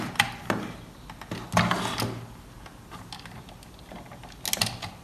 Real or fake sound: real